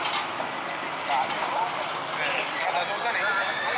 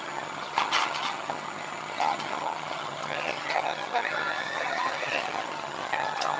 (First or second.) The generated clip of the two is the second